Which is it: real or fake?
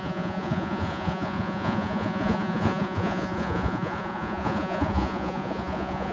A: fake